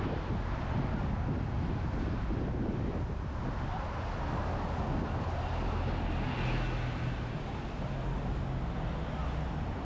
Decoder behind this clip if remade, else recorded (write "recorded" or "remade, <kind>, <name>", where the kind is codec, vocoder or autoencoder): recorded